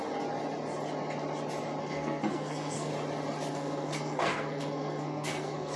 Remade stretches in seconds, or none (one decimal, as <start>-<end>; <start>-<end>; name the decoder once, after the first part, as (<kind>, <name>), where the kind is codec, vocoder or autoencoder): 1.8-2.9 (codec, SNAC); 3.5-5.8